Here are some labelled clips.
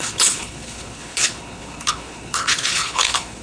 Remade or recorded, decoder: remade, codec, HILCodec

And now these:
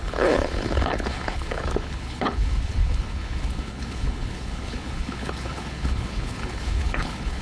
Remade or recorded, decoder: remade, codec, HILCodec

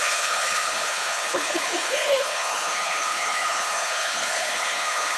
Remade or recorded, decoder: remade, codec, HILCodec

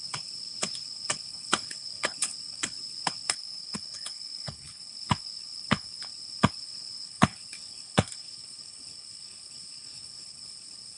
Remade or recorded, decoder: remade, codec, HILCodec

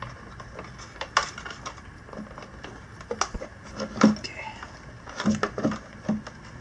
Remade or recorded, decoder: recorded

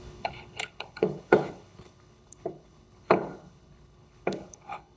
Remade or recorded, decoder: remade, codec, HILCodec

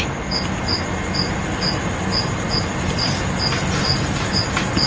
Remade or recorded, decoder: recorded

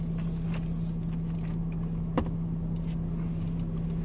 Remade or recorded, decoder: recorded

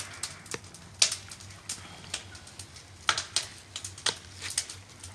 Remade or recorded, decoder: recorded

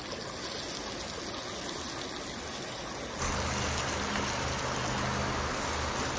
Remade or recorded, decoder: recorded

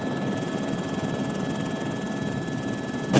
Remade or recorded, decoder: recorded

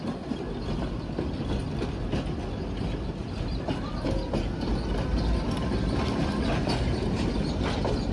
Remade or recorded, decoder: recorded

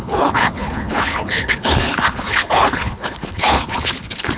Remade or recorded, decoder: remade, codec, HILCodec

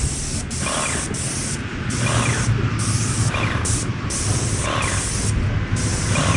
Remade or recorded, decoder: recorded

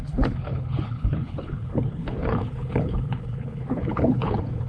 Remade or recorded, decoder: remade, codec, HILCodec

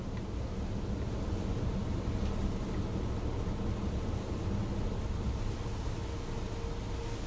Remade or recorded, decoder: recorded